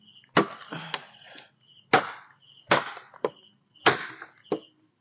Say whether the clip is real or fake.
real